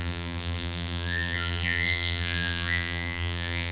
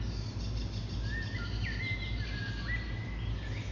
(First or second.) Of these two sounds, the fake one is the first